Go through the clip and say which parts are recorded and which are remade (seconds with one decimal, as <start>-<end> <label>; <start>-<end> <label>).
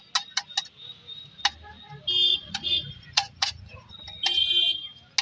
0.0-2.3 recorded; 2.3-3.9 remade; 3.9-5.2 recorded